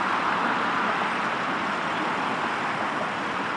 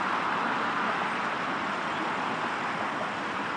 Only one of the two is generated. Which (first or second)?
first